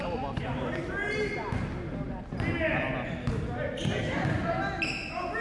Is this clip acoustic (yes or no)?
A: yes